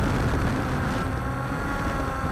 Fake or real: real